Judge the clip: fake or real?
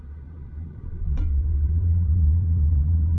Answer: fake